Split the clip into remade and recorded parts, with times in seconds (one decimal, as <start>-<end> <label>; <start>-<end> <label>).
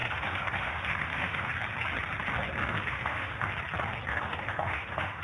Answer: 0.0-1.5 remade; 1.5-2.6 recorded; 2.6-3.5 remade; 3.5-4.1 recorded; 4.1-5.2 remade